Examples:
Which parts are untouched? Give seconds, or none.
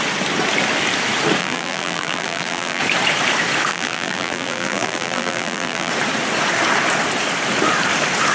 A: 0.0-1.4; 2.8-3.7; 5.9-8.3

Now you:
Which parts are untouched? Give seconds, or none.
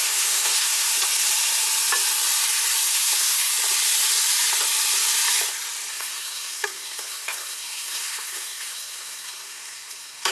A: 0.9-2.9; 3.5-5.9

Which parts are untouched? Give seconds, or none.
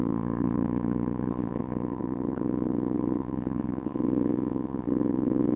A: none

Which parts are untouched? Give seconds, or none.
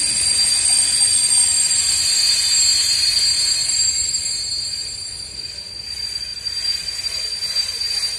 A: 0.0-2.7; 4.1-6.3; 7.3-8.2